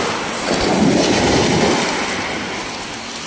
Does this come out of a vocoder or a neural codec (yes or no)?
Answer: no